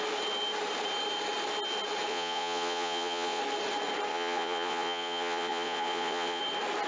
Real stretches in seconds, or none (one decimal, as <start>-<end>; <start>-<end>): 0.0-2.1; 3.4-4.1; 6.4-6.9